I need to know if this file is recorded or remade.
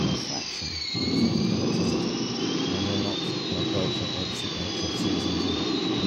remade